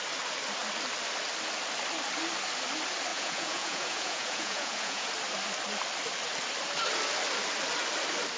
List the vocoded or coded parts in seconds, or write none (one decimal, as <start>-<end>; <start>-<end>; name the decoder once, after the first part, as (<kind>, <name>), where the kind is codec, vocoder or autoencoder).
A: 3.1-5.1 (vocoder, Vocos)